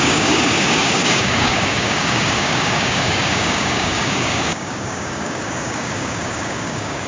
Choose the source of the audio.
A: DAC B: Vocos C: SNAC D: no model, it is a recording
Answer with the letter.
A